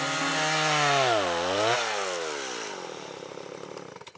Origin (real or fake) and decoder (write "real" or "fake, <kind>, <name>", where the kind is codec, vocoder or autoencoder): real